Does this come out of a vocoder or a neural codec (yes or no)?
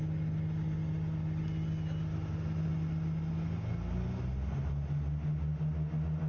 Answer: no